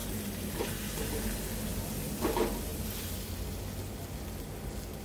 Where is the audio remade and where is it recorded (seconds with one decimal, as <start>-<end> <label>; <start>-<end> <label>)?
0.0-1.1 remade; 1.1-2.7 recorded; 2.7-3.3 remade; 3.3-5.0 recorded